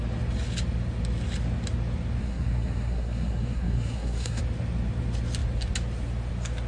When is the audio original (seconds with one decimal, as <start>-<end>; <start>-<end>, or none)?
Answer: 0.0-2.2; 4.4-6.7